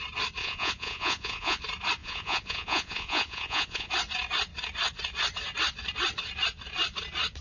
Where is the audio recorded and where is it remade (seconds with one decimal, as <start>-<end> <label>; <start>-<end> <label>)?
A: 0.0-0.4 recorded; 0.4-1.6 remade; 1.6-2.0 recorded; 2.0-3.9 remade; 3.9-7.4 recorded